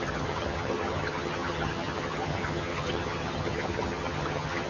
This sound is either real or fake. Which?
fake